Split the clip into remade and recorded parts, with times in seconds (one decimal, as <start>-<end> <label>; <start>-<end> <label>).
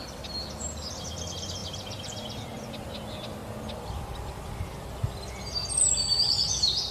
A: 0.0-6.9 recorded